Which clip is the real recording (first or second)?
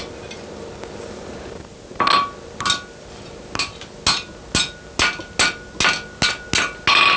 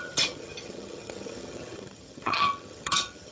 first